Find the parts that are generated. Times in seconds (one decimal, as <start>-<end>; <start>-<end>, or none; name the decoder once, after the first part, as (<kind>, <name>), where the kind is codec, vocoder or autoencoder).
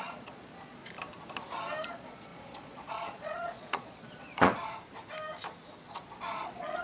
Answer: 0.0-0.8 (vocoder, Vocos); 1.9-4.5; 5.9-6.8